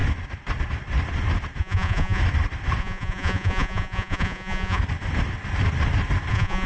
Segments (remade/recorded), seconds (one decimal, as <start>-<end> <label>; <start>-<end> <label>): 0.0-1.6 recorded; 1.6-2.2 remade; 2.2-2.8 recorded; 2.8-4.8 remade; 4.8-6.3 recorded; 6.3-6.7 remade